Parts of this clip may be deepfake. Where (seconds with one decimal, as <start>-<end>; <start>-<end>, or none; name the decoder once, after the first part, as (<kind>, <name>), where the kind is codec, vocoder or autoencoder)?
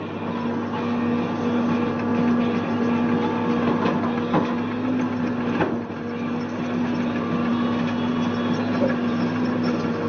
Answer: none